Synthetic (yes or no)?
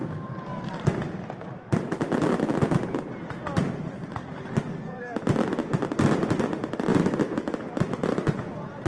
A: no